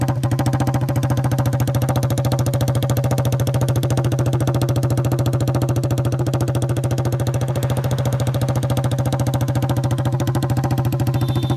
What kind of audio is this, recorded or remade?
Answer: recorded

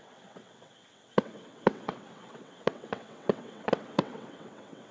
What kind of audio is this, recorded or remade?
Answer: remade